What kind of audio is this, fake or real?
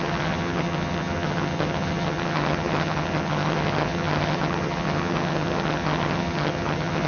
fake